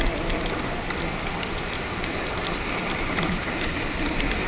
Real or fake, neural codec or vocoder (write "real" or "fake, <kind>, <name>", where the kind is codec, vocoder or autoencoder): real